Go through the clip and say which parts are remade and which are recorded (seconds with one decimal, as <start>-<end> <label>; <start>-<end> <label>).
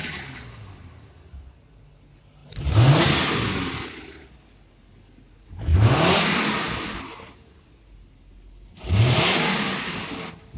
0.0-10.6 recorded